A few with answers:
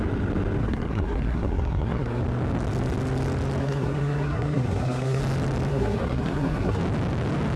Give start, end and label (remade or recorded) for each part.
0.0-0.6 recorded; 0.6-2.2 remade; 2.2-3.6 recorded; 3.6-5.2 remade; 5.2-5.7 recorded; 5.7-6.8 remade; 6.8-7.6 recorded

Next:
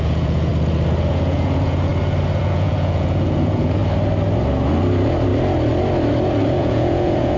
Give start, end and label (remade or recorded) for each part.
0.0-0.5 remade; 0.5-1.1 recorded; 1.1-1.9 remade; 1.9-2.4 recorded; 2.4-3.8 remade; 3.8-6.6 recorded; 6.6-7.4 remade